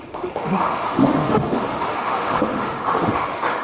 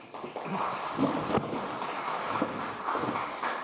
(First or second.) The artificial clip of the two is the first